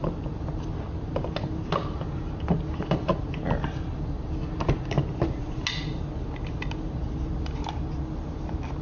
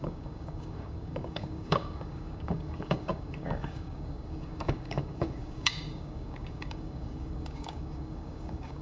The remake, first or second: second